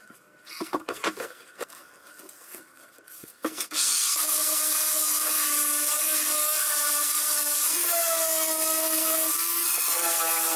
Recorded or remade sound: remade